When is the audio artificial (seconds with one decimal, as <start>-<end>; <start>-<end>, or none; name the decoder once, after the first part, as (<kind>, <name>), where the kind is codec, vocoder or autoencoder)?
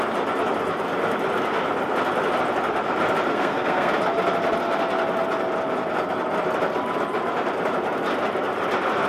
3.3-3.9 (codec, SNAC)